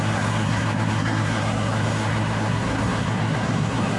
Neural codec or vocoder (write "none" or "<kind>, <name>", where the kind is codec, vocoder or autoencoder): codec, SNAC